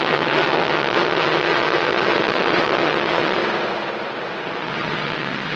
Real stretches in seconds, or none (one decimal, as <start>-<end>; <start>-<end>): 3.4-4.4